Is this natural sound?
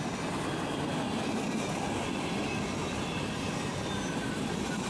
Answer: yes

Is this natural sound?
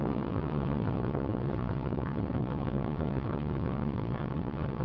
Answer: no